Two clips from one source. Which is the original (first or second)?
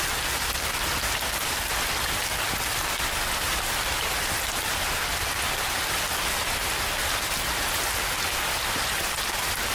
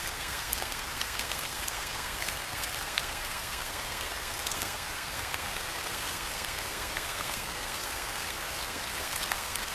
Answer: first